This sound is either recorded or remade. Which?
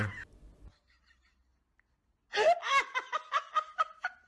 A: recorded